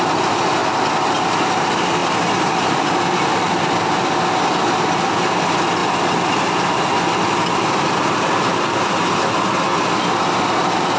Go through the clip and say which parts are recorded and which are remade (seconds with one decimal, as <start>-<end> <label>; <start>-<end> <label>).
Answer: 0.0-11.0 recorded